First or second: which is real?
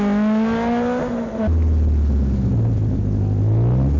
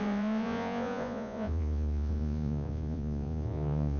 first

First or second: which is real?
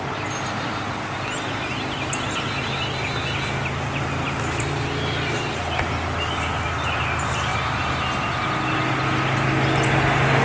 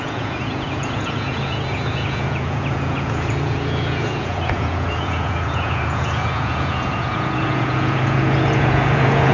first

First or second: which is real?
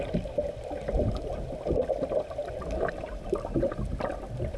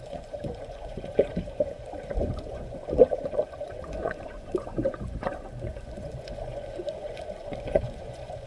first